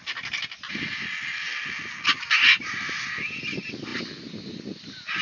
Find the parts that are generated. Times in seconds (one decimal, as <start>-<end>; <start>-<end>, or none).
none

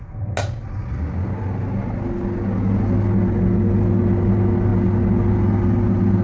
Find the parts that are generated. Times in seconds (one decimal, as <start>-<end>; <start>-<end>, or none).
none